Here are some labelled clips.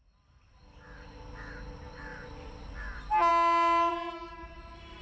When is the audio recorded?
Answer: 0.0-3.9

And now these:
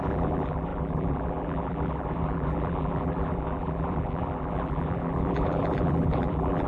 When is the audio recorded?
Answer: none

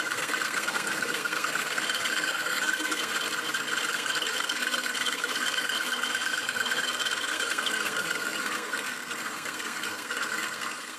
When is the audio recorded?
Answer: 3.1-3.9

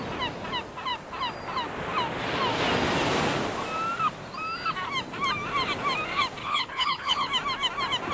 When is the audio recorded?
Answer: 0.0-6.4; 7.3-8.1